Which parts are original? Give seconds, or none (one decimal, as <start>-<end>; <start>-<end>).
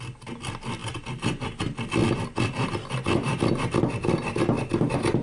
0.0-5.2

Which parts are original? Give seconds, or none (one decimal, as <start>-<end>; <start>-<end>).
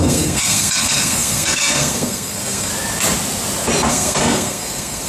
2.7-3.9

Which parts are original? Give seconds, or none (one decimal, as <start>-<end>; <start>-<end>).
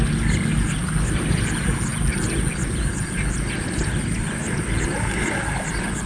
0.0-6.1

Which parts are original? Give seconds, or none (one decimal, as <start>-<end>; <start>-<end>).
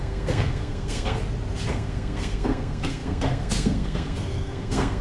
1.2-1.7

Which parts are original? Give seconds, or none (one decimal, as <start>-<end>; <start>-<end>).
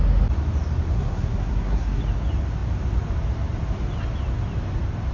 0.0-0.9; 2.0-5.1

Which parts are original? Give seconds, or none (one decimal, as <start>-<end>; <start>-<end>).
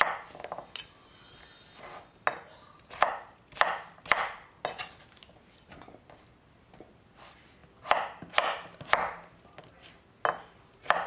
0.0-11.1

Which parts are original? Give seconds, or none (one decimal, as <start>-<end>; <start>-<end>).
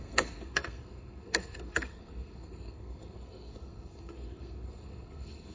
none